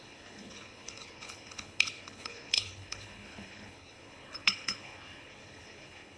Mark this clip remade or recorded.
remade